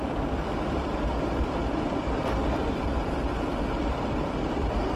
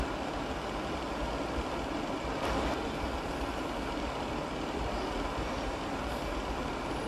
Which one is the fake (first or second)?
first